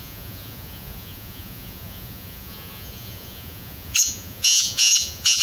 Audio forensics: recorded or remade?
remade